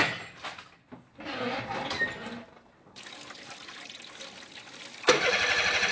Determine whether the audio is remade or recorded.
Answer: recorded